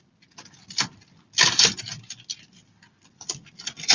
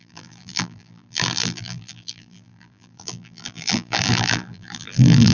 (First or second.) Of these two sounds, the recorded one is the first